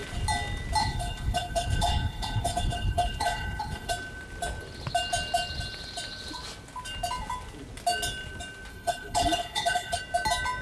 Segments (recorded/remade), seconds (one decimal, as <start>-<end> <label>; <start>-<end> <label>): 0.0-0.8 recorded; 0.8-3.9 remade; 3.9-8.7 recorded; 8.7-10.0 remade; 10.0-10.6 recorded

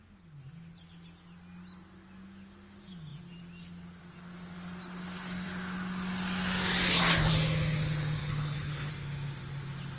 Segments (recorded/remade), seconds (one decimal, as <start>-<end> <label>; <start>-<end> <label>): 0.0-8.2 recorded; 8.2-8.9 remade; 8.9-10.0 recorded